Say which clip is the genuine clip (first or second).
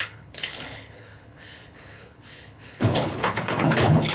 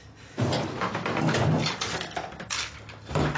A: second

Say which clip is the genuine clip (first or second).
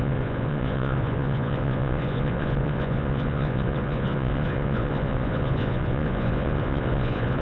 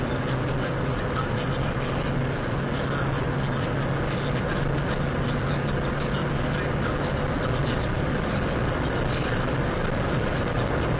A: second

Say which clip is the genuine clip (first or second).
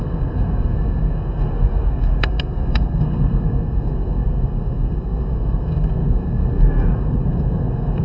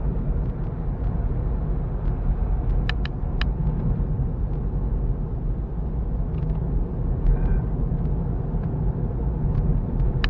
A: second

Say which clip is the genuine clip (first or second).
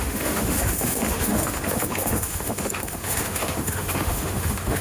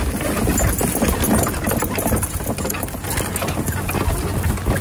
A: second